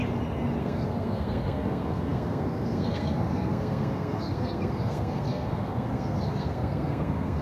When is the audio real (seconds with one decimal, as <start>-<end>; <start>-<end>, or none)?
0.0-0.6